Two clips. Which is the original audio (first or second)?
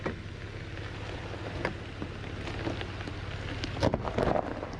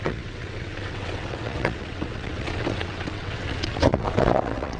first